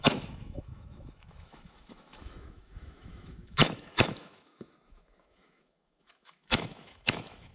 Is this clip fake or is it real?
fake